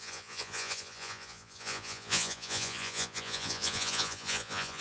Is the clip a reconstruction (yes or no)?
yes